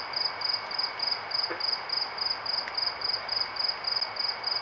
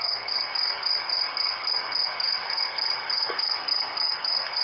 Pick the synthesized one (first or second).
second